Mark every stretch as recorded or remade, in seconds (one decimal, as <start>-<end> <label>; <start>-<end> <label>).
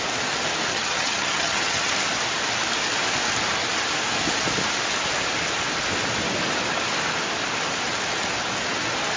0.0-0.7 recorded; 0.7-1.9 remade; 1.9-9.2 recorded